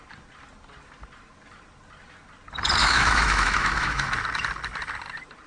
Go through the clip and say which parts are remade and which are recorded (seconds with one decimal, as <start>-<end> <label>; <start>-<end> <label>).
0.0-2.8 recorded; 2.8-4.1 remade; 4.1-5.5 recorded